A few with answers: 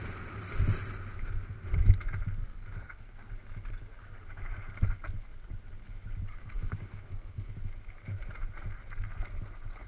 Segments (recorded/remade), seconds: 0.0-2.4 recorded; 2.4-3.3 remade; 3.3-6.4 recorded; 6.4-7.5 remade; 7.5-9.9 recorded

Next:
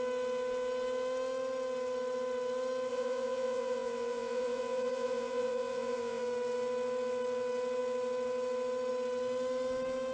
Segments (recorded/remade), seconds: 0.0-2.9 recorded; 2.9-6.2 remade; 6.2-10.1 recorded

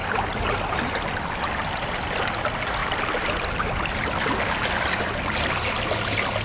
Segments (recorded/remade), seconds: 0.0-6.4 recorded

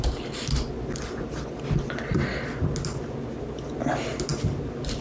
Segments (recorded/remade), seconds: 0.0-5.0 recorded

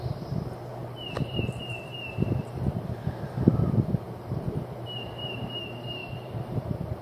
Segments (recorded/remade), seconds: 0.0-7.0 remade

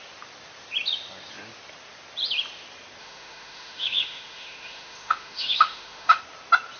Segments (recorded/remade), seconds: 0.0-3.0 recorded; 3.0-6.2 remade; 6.2-6.8 recorded

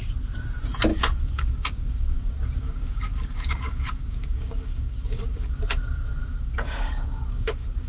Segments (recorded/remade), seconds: 0.0-0.9 recorded; 0.9-5.6 remade; 5.6-6.2 recorded; 6.2-7.9 remade

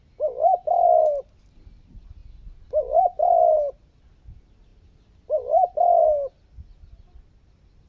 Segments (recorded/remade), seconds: 0.0-7.9 recorded